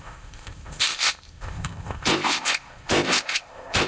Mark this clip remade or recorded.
remade